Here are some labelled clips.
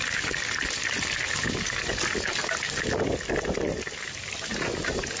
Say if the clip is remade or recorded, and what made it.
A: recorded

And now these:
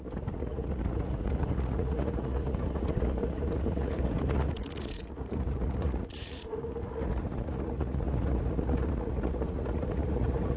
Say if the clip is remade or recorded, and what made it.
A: remade, vocoder, Vocos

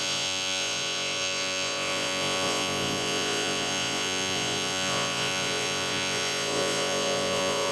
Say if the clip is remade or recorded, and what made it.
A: remade, vocoder, Vocos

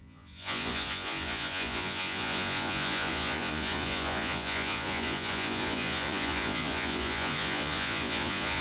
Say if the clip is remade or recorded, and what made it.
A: remade, vocoder, Vocos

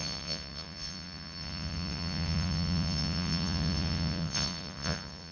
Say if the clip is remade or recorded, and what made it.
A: remade, vocoder, Vocos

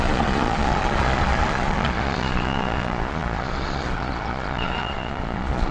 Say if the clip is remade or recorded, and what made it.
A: remade, vocoder, Vocos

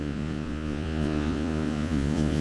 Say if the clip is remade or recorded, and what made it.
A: remade, vocoder, Vocos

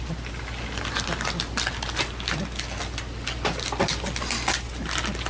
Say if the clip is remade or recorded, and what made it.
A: recorded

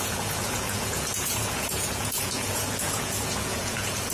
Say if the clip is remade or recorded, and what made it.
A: remade, vocoder, Vocos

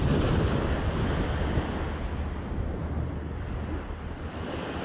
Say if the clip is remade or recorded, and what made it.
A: recorded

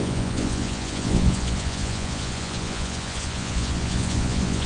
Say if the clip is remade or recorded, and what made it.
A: remade, vocoder, Vocos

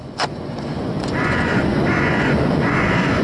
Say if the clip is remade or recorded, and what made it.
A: remade, vocoder, Vocos